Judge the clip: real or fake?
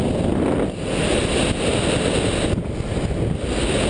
real